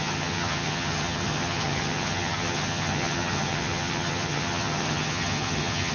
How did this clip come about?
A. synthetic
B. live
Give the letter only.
A